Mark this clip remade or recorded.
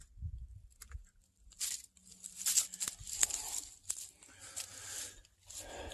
recorded